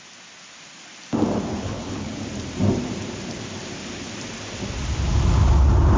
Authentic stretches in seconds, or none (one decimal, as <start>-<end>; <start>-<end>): 0.0-1.6; 2.1-6.0